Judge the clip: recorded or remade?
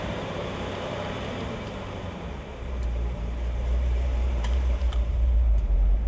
remade